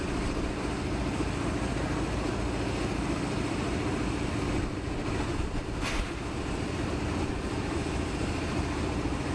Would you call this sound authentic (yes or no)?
yes